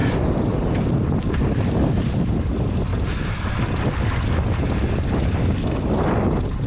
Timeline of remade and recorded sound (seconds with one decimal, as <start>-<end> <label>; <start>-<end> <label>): 0.0-2.5 remade; 2.5-2.9 recorded; 2.9-3.5 remade; 3.5-6.7 recorded